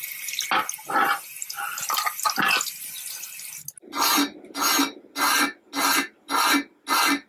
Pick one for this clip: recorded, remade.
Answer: recorded